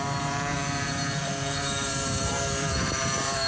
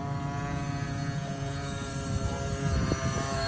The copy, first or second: first